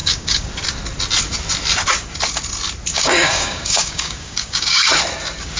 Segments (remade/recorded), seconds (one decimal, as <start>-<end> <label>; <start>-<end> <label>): 0.0-0.5 remade; 0.5-2.9 recorded; 2.9-4.9 remade; 4.9-5.6 recorded